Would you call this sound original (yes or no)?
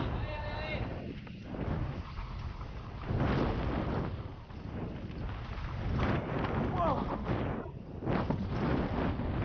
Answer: yes